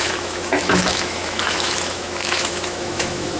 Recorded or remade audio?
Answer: remade